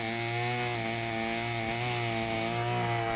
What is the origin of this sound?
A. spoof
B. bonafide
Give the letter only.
B